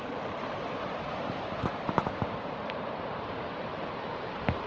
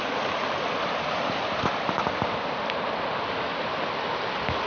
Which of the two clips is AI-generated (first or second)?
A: first